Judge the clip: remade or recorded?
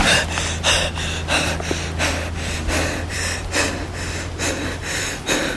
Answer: recorded